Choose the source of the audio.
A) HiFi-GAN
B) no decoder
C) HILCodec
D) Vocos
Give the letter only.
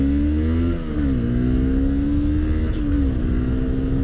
B